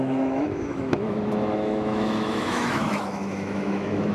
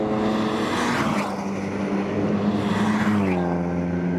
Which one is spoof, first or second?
first